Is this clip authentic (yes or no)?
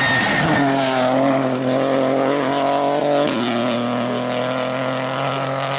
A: yes